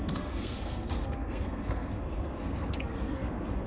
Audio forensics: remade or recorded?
remade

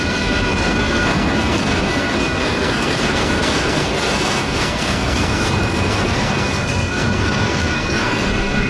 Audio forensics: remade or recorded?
remade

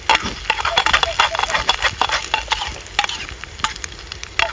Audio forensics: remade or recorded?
recorded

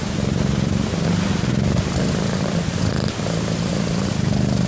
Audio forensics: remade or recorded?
recorded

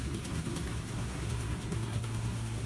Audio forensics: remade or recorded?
remade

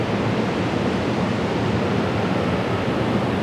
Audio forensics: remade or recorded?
recorded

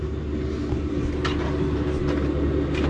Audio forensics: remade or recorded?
recorded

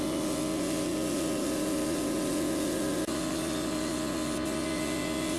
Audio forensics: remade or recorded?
recorded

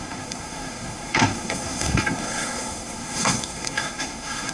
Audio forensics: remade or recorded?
remade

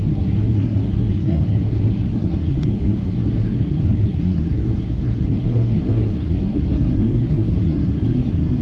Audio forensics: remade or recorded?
remade